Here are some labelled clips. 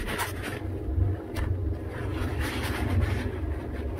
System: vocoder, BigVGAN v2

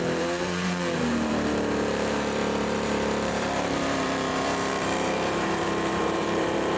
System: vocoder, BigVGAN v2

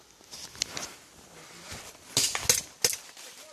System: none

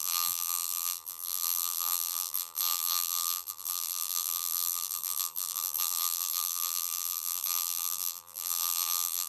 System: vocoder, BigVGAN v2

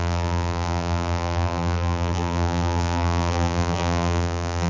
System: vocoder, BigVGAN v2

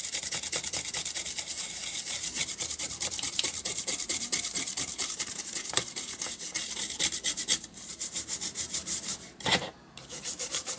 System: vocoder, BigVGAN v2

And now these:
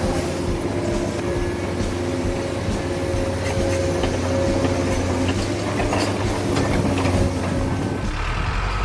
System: none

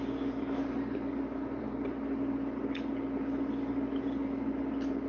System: none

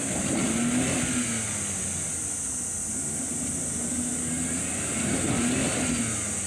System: none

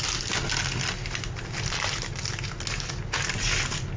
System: none